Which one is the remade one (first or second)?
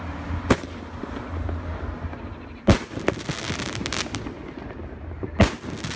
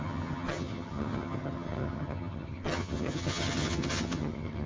second